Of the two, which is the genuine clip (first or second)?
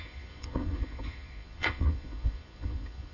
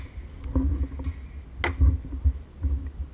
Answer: second